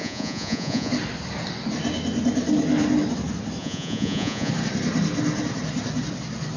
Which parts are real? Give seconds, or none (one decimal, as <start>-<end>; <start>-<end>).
0.9-3.6; 4.5-6.6